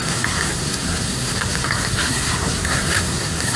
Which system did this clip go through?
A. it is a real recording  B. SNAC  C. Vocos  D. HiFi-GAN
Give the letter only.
B